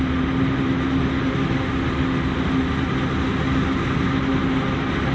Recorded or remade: recorded